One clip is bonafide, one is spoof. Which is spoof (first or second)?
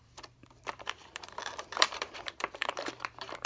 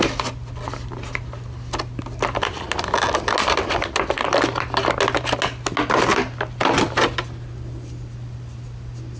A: first